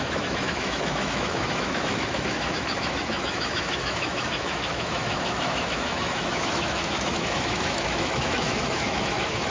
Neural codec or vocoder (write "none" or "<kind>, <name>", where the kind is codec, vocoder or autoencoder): autoencoder, DAC-VAE